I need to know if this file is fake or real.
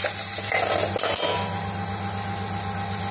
real